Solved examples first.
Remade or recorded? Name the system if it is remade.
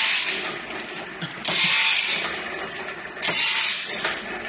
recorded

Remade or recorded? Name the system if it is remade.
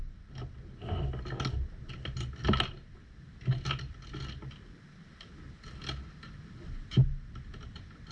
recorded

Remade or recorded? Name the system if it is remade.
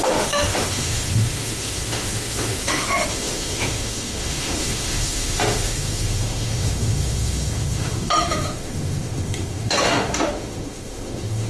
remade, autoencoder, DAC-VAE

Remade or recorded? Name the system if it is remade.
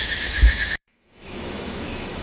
remade, autoencoder, DAC-VAE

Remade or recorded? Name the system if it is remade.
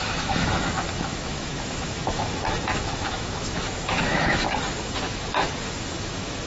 remade, autoencoder, DAC-VAE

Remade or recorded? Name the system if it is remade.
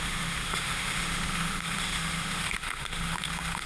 remade, autoencoder, DAC-VAE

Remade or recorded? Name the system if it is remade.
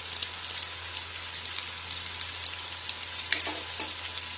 recorded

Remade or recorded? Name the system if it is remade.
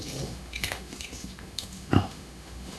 remade, autoencoder, DAC-VAE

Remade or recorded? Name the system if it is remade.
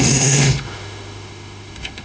remade, autoencoder, DAC-VAE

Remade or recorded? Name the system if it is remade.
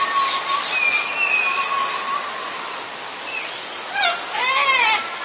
recorded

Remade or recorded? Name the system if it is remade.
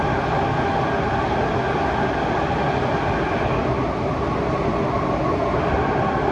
recorded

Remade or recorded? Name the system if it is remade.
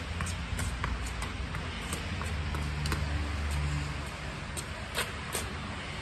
recorded